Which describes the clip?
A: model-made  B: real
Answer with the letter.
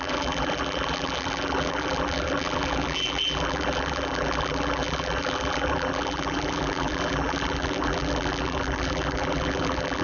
A